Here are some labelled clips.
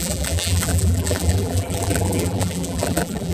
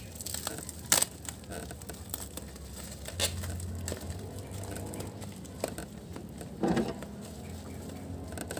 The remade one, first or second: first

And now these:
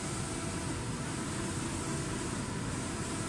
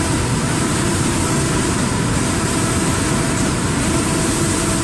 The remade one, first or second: second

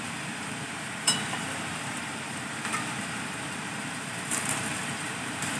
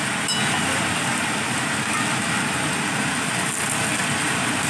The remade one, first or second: first